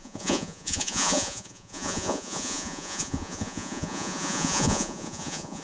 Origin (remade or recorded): remade